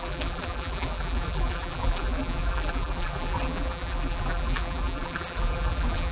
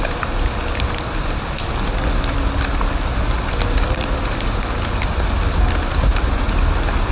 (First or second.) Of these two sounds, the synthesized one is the first